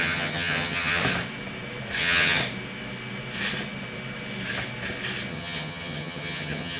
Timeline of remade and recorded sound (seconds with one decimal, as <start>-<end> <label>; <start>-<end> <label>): 0.0-1.0 remade; 1.0-2.0 recorded; 2.0-2.4 remade; 2.4-5.3 recorded; 5.3-6.8 remade